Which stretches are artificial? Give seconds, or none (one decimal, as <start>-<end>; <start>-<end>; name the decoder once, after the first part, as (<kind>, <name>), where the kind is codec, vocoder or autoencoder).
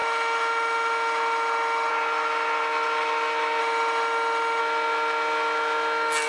0.0-1.9 (autoencoder, DAC-VAE); 3.6-4.6